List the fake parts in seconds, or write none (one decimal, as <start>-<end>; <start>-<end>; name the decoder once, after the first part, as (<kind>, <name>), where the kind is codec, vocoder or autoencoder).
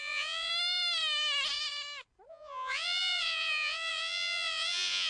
0.0-0.5 (vocoder, Vocos); 2.3-5.1